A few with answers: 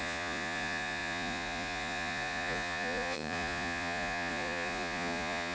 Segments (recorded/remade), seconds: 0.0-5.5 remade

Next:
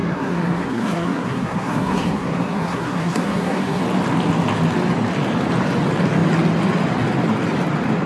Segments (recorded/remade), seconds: 0.0-3.8 remade; 3.8-8.1 recorded

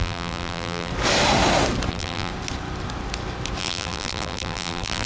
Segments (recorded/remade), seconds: 0.0-0.9 remade; 0.9-1.9 recorded; 1.9-2.3 remade; 2.3-3.6 recorded; 3.6-5.1 remade

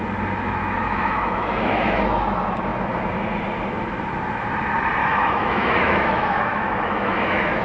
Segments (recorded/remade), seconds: 0.0-0.6 recorded; 0.6-2.0 remade; 2.0-5.0 recorded; 5.0-7.6 remade

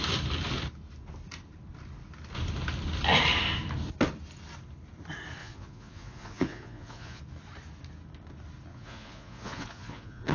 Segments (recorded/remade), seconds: 0.0-5.4 recorded; 5.4-7.2 remade; 7.2-8.7 recorded; 8.7-10.3 remade

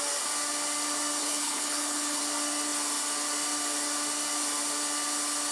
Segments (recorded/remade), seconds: 0.0-1.2 recorded; 1.2-2.2 remade; 2.2-5.5 recorded